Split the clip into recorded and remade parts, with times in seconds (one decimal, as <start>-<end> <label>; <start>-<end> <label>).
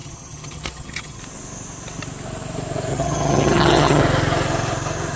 0.0-1.2 remade; 1.2-2.9 recorded; 2.9-4.0 remade; 4.0-5.2 recorded